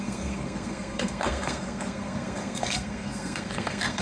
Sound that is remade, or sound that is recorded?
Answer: remade